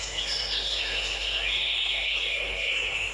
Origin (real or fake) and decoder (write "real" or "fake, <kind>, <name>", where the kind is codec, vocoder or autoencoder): fake, codec, SNAC